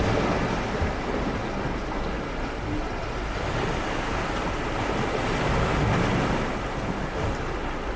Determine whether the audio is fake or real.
real